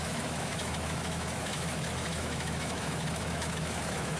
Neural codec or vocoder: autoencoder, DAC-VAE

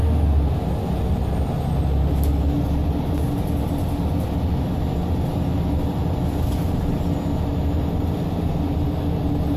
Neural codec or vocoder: none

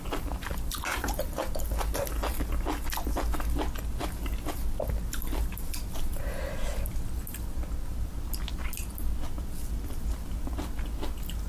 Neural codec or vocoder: none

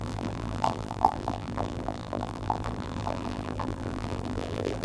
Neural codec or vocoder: vocoder, BigVGAN v2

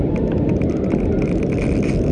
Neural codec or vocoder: none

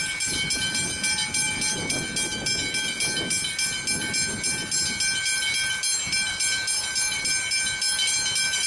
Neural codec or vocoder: none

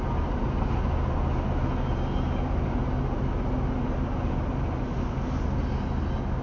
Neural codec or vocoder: none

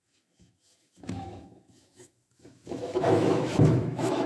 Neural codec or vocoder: autoencoder, DAC-VAE